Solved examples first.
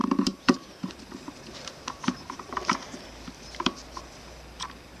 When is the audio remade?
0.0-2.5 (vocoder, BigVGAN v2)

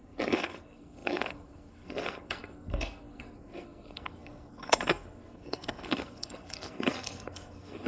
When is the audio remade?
0.0-7.9 (codec, SNAC)

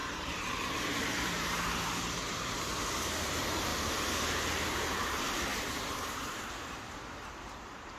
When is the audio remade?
0.0-8.0 (vocoder, BigVGAN v2)

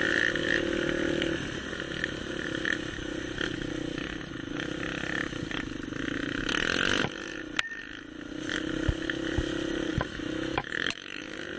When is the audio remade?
9.9-11.2 (autoencoder, DAC-VAE)